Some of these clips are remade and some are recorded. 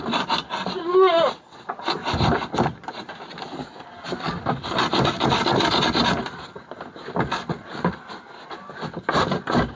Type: recorded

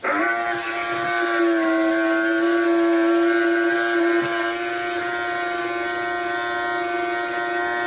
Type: recorded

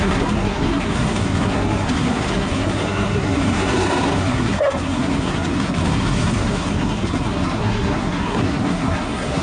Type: remade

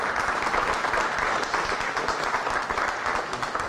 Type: recorded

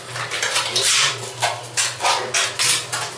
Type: recorded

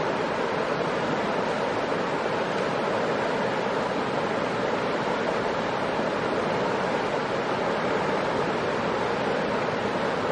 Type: recorded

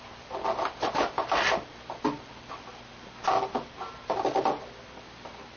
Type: recorded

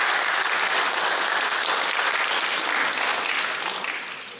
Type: recorded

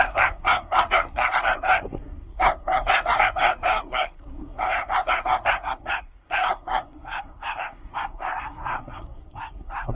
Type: remade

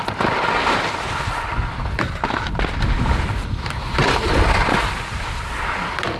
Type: recorded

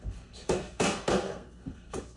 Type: remade